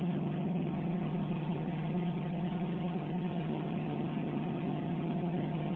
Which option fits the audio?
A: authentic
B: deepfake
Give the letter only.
B